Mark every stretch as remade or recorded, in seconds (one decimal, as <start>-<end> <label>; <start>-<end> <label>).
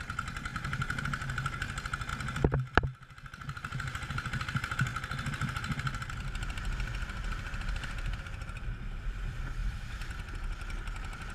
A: 0.0-0.5 recorded; 0.5-1.0 remade; 1.0-11.3 recorded